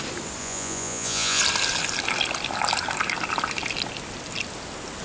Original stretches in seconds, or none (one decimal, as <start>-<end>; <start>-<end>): 0.0-0.4; 1.4-5.0